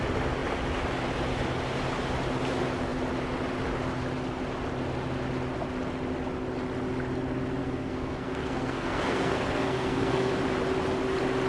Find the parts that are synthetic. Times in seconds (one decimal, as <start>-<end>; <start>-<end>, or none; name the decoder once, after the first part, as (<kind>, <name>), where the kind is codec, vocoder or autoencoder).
7.6-10.3 (codec, SNAC)